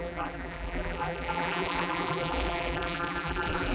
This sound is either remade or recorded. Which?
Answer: remade